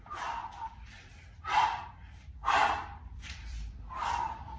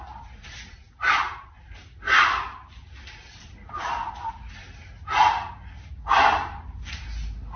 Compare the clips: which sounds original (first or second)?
second